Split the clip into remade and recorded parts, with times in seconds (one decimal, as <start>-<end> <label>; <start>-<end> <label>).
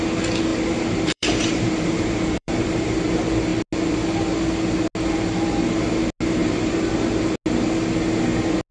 0.0-0.5 recorded; 0.5-3.0 remade; 3.0-6.4 recorded; 6.4-6.9 remade; 6.9-8.7 recorded